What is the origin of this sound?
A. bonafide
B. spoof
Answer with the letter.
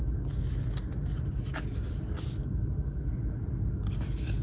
A